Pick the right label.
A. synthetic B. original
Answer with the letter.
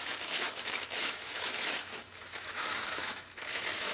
A